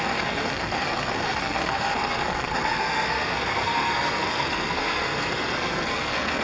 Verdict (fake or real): fake